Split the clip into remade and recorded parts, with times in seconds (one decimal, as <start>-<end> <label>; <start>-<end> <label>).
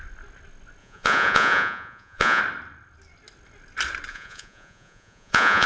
0.0-0.8 recorded; 0.8-2.4 remade; 2.4-4.1 recorded; 4.1-5.7 remade